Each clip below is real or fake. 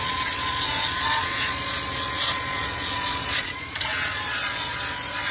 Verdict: fake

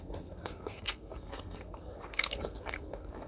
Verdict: fake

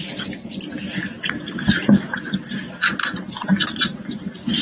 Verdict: real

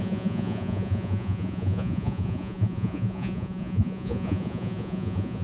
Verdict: fake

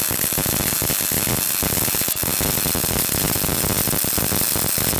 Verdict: real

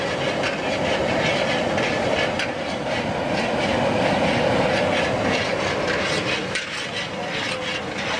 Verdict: real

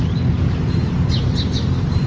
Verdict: real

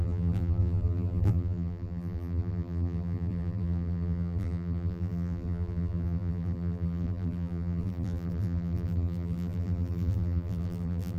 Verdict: fake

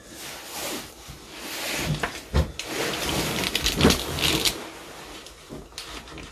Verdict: real